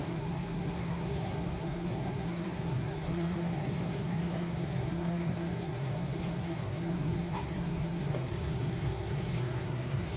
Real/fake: fake